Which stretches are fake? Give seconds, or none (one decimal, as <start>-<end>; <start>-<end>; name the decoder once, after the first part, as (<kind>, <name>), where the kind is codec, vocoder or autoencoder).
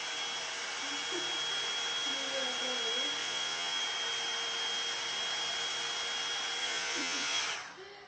3.2-3.8 (vocoder, Vocos); 6.6-7.4